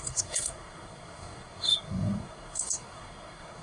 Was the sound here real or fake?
fake